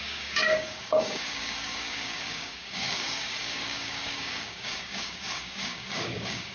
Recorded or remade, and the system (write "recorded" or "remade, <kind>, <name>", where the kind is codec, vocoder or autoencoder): remade, codec, DAC